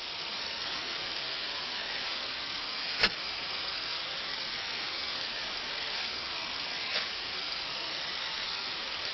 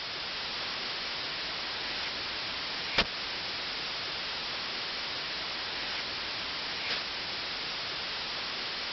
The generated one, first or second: first